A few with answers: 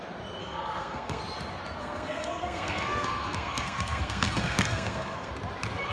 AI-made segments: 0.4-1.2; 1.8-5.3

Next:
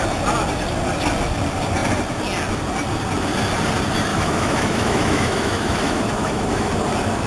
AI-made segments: 4.1-6.7

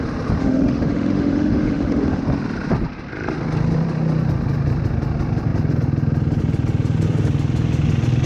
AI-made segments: 0.4-2.2

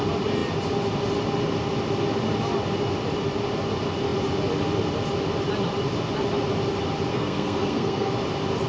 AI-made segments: 7.1-8.1

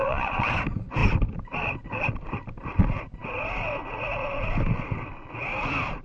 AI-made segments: 0.0-0.5

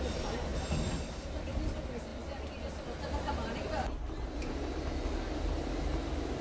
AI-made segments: 0.5-1.3

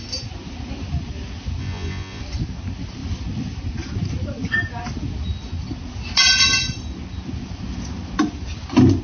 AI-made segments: 1.6-2.2